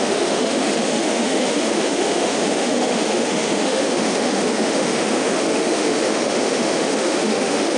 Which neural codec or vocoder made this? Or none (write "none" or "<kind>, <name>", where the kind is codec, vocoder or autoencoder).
autoencoder, DAC-VAE